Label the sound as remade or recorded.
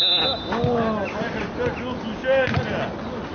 recorded